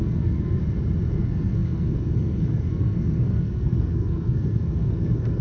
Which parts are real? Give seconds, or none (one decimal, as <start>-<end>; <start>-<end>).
0.6-1.1